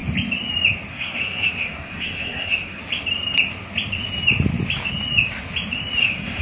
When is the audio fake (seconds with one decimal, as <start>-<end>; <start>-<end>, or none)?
0.9-2.8; 6.0-6.4